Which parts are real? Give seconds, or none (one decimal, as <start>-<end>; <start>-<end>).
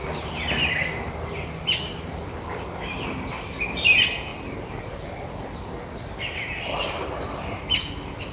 0.0-8.3